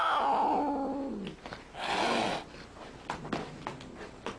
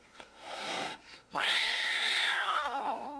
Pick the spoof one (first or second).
second